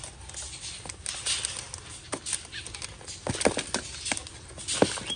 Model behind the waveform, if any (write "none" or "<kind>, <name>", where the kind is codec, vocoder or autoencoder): none